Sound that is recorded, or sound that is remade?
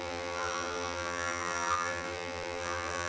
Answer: remade